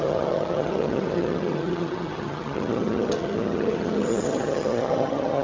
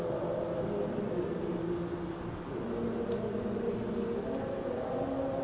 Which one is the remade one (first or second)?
first